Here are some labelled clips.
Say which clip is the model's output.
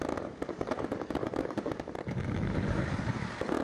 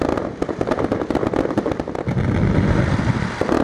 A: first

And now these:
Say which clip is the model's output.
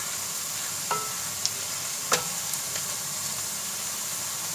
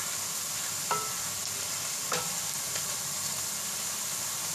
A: second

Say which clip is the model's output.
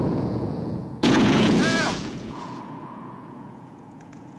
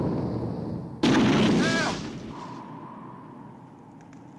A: first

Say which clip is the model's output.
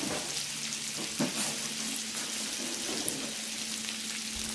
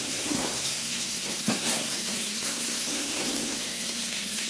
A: second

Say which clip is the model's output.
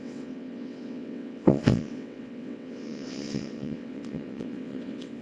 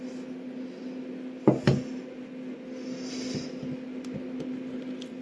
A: first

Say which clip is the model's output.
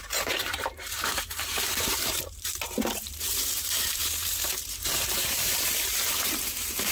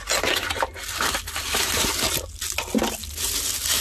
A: first